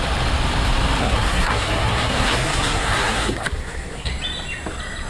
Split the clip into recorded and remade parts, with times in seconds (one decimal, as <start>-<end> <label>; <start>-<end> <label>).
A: 0.0-1.0 recorded; 1.0-4.1 remade; 4.1-5.1 recorded